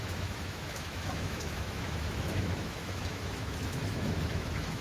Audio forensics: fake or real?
fake